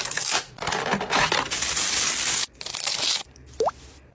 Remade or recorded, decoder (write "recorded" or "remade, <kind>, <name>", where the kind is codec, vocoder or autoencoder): recorded